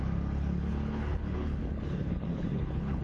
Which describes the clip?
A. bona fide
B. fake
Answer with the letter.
B